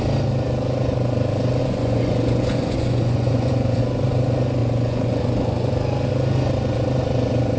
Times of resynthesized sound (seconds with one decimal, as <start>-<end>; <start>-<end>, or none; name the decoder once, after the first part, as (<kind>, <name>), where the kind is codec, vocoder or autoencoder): 1.6-3.8 (vocoder, Vocos); 4.6-5.7